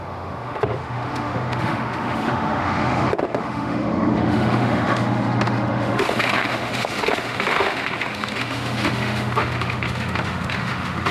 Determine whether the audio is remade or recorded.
remade